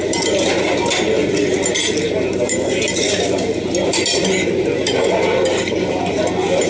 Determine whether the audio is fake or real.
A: real